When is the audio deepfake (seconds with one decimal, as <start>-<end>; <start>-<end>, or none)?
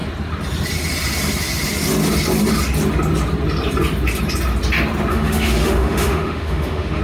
5.1-7.0